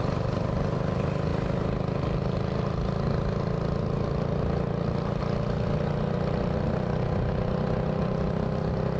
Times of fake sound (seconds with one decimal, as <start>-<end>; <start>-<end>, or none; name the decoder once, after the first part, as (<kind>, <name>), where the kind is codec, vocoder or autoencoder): none